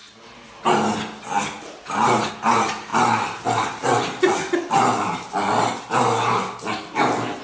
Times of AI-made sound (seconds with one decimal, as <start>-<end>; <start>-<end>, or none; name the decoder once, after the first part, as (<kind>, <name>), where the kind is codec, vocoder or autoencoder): none